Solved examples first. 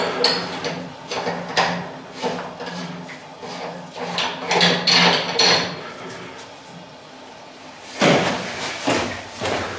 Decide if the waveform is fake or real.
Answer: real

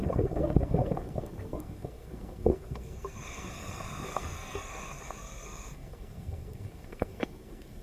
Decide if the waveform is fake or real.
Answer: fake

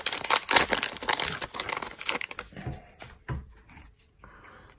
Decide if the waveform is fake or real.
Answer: real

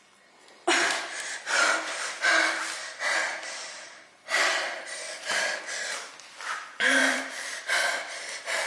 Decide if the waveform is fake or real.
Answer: fake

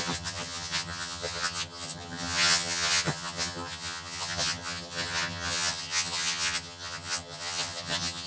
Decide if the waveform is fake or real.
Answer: fake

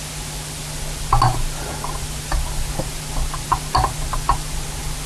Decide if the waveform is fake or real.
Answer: real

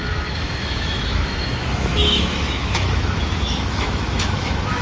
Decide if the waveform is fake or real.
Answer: fake